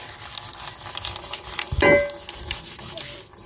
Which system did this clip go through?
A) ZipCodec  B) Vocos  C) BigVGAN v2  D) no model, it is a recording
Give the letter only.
D